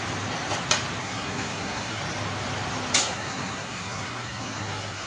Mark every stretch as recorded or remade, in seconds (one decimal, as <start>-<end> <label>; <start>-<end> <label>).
0.0-1.0 recorded; 1.0-2.0 remade; 2.0-3.0 recorded; 3.0-5.1 remade